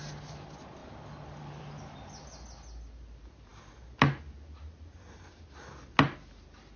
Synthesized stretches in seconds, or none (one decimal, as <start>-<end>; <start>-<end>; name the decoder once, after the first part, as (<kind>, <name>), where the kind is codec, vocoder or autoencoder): none